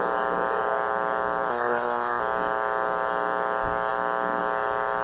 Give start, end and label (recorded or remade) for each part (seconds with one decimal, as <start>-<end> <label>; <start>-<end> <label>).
0.0-1.5 recorded; 1.5-2.2 remade; 2.2-5.0 recorded